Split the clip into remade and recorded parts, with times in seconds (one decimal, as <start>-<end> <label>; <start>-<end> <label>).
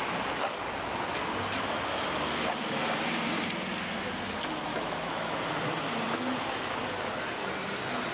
0.0-4.7 recorded; 4.7-5.3 remade; 5.3-8.1 recorded